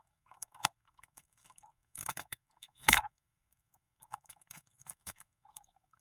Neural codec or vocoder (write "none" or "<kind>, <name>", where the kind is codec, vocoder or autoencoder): codec, SNAC